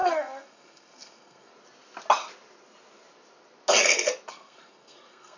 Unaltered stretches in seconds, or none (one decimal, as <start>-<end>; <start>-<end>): 1.5-4.3